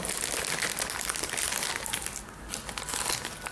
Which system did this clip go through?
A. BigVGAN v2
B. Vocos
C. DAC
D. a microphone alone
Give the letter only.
D